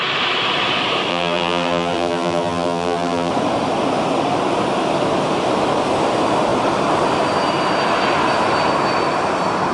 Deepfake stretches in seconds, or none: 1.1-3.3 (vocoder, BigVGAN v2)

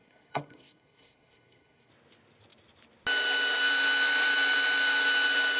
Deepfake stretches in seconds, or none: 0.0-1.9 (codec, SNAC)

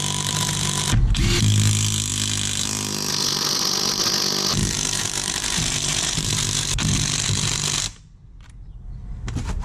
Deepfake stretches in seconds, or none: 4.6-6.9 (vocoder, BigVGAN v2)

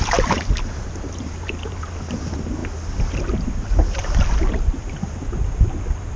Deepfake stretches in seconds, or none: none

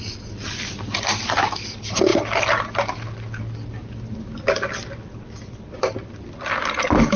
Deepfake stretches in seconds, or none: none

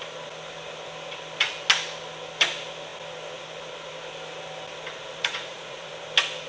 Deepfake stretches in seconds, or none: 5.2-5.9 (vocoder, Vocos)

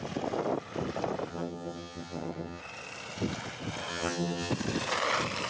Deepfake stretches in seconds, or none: 1.3-2.6 (vocoder, HiFi-GAN); 3.9-4.5

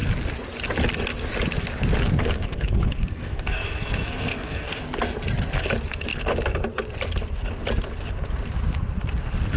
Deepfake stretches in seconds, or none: 2.2-4.7 (codec, SNAC)